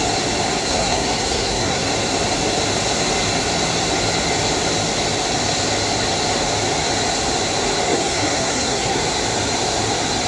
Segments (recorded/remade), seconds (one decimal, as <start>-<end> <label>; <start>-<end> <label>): 0.0-0.6 recorded; 0.6-1.9 remade; 1.9-7.8 recorded; 7.8-9.0 remade; 9.0-10.3 recorded